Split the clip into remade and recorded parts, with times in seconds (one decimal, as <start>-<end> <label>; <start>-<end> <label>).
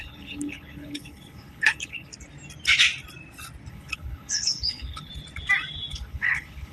0.0-2.1 remade; 2.1-3.7 recorded; 3.7-5.1 remade; 5.1-5.9 recorded; 5.9-6.7 remade